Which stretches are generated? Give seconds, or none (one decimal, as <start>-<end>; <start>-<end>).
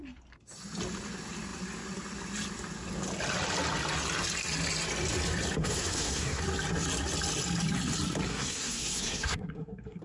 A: 5.6-6.4; 8.3-10.0